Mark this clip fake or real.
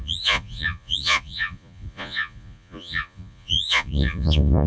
fake